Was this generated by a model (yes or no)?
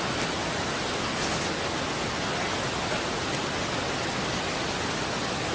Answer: no